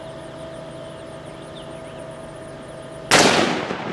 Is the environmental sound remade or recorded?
recorded